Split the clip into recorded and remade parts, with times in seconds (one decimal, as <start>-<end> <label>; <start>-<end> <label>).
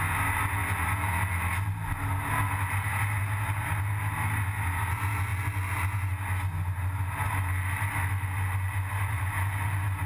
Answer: 0.0-10.1 recorded